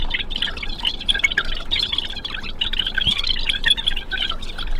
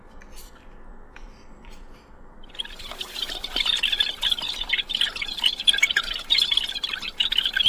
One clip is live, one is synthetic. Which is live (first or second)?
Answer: first